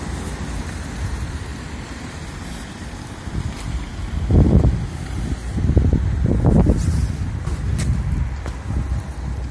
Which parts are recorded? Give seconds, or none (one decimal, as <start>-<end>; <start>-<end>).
0.0-9.5